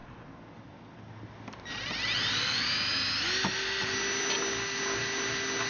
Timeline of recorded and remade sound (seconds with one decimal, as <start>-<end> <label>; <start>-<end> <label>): 0.0-5.7 recorded

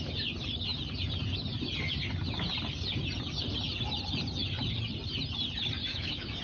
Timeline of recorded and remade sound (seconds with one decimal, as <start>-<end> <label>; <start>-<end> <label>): 0.0-5.9 recorded; 5.9-6.4 remade

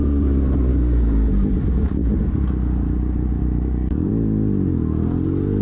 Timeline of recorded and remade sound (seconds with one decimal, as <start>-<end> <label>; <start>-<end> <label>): 0.0-0.7 recorded; 0.7-1.3 remade; 1.3-3.4 recorded; 3.4-4.1 remade; 4.1-5.6 recorded

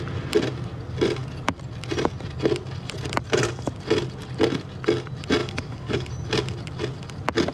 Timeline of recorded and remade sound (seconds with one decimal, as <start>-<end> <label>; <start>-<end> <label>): 0.0-5.4 recorded; 5.4-6.1 remade; 6.1-7.5 recorded